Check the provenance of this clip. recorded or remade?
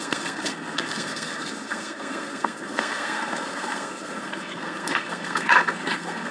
remade